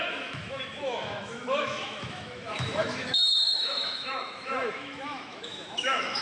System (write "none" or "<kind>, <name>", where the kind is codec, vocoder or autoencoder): autoencoder, DAC-VAE